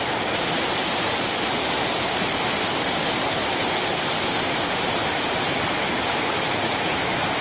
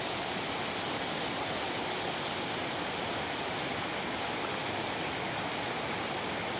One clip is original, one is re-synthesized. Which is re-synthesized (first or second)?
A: first